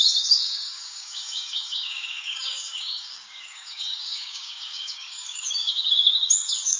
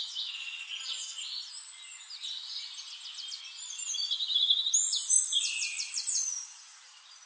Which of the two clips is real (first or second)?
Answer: second